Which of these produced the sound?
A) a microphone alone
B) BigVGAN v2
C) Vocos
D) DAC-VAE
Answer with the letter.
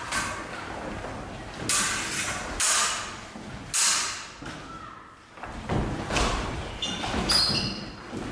A